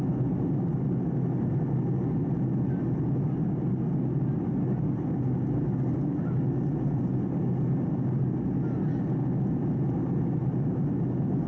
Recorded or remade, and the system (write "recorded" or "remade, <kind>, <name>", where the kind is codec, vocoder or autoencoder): recorded